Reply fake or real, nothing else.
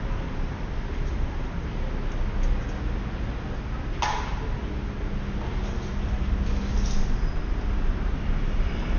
real